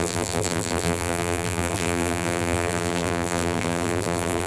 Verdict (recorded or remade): remade